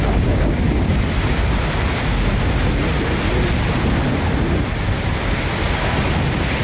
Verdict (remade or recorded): recorded